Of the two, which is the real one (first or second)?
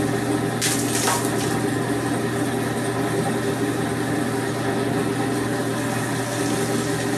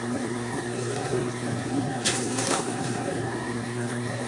first